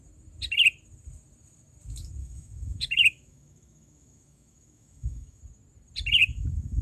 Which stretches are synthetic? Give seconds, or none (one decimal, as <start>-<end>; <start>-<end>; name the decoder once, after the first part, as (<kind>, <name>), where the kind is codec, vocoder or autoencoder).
2.2-5.4 (autoencoder, DAC-VAE); 6.2-6.8